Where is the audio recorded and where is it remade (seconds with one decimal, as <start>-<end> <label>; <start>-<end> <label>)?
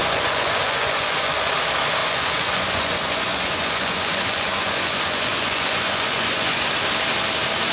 0.0-1.5 remade; 1.5-2.0 recorded; 2.0-6.6 remade; 6.6-7.7 recorded